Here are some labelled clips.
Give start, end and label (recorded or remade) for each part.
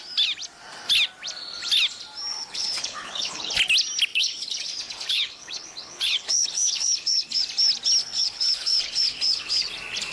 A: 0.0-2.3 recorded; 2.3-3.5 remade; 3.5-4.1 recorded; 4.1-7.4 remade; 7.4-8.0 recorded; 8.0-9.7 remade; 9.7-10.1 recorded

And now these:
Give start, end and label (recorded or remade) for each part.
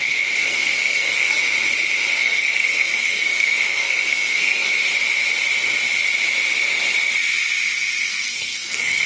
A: 0.0-0.4 recorded; 0.4-1.4 remade; 1.4-2.2 recorded; 2.2-4.7 remade; 4.7-8.1 recorded; 8.1-9.1 remade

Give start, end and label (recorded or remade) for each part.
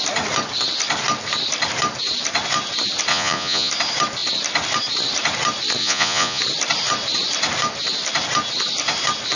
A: 0.0-3.1 recorded; 3.1-3.7 remade; 3.7-5.8 recorded; 5.8-6.4 remade; 6.4-9.4 recorded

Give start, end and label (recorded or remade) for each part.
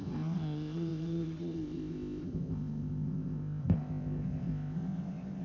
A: 0.0-5.4 remade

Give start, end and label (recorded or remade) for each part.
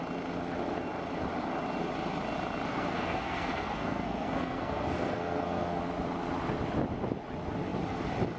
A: 0.0-2.7 recorded; 2.7-5.8 remade; 5.8-8.4 recorded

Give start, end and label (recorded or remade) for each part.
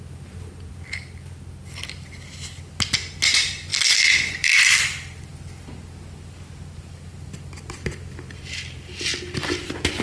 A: 0.0-3.7 recorded; 3.7-4.8 remade; 4.8-10.0 recorded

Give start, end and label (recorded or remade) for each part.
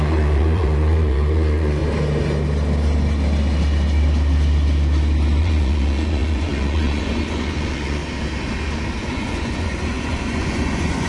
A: 0.0-1.8 remade; 1.8-5.4 recorded; 5.4-8.0 remade; 8.0-9.0 recorded; 9.0-11.1 remade